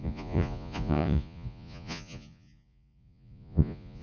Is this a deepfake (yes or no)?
yes